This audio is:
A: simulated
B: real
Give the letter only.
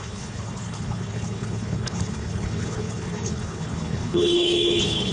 A